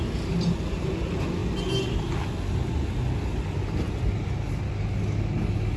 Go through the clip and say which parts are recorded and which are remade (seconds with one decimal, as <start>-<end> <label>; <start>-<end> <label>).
0.0-5.8 recorded